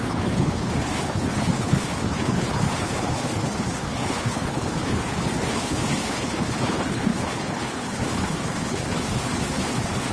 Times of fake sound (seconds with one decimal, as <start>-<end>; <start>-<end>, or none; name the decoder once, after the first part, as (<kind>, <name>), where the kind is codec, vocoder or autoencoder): 0.0-10.1 (codec, HILCodec)